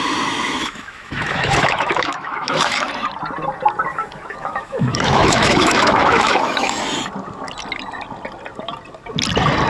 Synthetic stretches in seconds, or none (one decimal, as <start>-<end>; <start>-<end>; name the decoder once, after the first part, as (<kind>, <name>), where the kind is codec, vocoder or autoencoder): 0.6-2.9 (autoencoder, DAC-VAE); 3.9-6.8